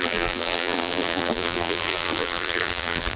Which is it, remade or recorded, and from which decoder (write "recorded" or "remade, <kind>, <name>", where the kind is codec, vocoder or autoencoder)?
remade, vocoder, BigVGAN v2